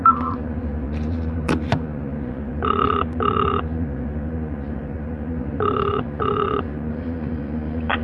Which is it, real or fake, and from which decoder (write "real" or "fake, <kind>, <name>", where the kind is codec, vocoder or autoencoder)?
fake, vocoder, Vocos